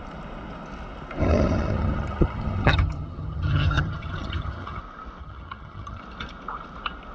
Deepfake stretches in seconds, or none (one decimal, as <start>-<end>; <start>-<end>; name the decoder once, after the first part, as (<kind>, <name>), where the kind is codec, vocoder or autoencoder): 1.2-4.8 (vocoder, HiFi-GAN); 5.2-6.0